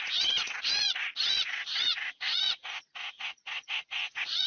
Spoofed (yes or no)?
yes